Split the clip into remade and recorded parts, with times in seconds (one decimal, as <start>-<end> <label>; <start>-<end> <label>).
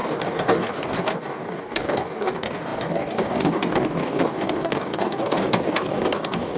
0.0-6.6 remade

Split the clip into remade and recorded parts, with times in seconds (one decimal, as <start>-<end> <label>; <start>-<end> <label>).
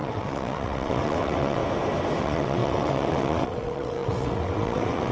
0.0-1.6 remade; 1.6-2.2 recorded; 2.2-5.1 remade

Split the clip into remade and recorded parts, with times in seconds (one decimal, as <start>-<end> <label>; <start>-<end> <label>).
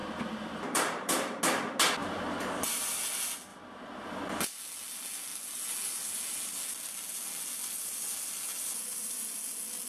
0.0-1.4 remade; 1.4-2.0 recorded; 2.0-2.8 remade; 2.8-3.5 recorded; 3.5-4.2 remade; 4.2-9.9 recorded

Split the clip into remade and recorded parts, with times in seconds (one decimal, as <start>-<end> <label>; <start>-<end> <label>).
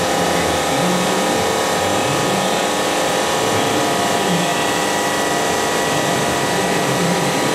0.0-7.5 recorded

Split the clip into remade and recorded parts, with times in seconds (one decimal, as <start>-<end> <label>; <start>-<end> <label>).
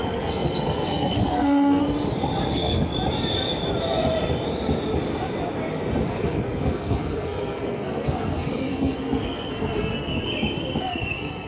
0.0-1.8 remade; 1.8-2.5 recorded; 2.5-2.9 remade; 2.9-6.1 recorded; 6.1-10.1 remade; 10.1-10.8 recorded; 10.8-11.5 remade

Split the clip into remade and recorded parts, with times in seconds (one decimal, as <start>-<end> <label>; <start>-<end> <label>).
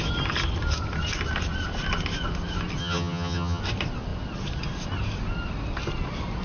0.0-2.8 recorded; 2.8-3.6 remade; 3.6-6.4 recorded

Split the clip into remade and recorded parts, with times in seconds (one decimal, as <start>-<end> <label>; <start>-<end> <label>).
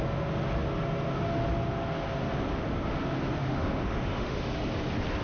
0.0-3.4 recorded; 3.4-4.5 remade; 4.5-5.2 recorded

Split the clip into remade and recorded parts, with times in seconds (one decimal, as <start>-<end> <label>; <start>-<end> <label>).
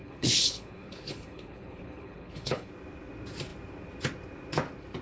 0.0-2.7 remade; 2.7-5.0 recorded